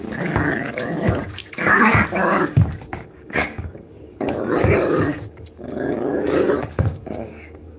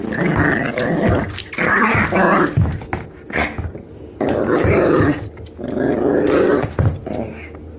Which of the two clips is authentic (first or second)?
second